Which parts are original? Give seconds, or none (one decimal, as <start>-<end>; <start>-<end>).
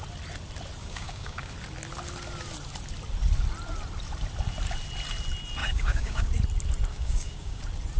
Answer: 0.0-0.8; 1.5-5.6; 6.3-6.9; 7.6-8.0